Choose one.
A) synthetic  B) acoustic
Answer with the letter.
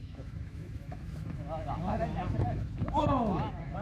A